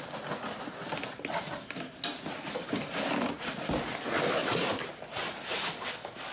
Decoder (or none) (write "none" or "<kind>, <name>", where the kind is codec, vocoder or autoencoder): none